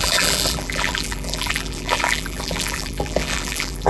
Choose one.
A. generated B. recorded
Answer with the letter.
A